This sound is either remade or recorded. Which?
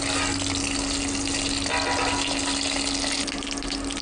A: recorded